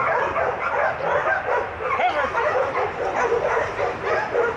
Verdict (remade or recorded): recorded